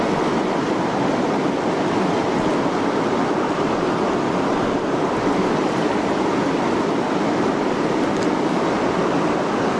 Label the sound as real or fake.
real